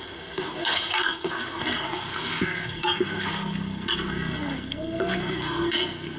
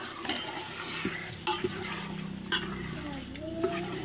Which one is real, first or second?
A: second